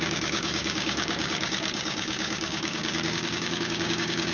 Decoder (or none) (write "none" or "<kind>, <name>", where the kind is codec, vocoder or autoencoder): codec, DAC